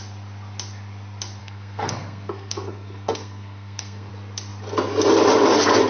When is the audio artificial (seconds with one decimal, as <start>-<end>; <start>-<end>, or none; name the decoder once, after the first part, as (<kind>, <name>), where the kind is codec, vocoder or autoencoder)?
1.4-4.1 (codec, SNAC)